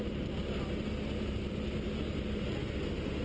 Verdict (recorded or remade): recorded